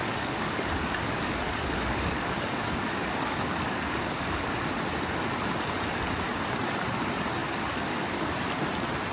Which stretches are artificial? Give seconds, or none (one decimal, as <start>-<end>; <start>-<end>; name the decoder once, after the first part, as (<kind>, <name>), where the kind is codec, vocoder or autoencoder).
0.0-4.5 (codec, DAC); 7.4-8.3